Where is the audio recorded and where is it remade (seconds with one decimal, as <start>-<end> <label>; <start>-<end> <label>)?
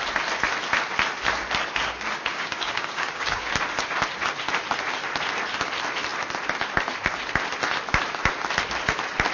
0.0-2.3 recorded; 2.3-3.5 remade; 3.5-9.3 recorded